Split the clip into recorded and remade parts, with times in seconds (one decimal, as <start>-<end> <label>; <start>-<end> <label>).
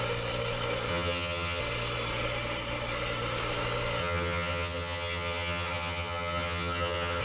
0.0-0.9 recorded; 0.9-1.6 remade; 1.6-4.0 recorded; 4.0-7.2 remade